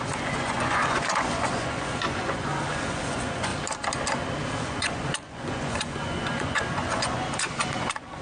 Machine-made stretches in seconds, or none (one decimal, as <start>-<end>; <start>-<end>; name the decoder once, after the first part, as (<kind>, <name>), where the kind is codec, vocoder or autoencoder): 0.0-3.5 (vocoder, Vocos); 4.6-8.2